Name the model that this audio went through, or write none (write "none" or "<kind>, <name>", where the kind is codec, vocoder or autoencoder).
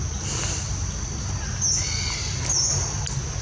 none